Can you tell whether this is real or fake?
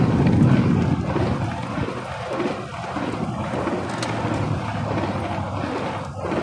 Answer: real